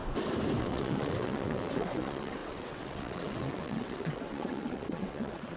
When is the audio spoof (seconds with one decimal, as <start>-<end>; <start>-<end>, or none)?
0.6-5.6